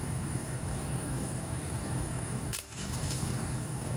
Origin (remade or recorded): remade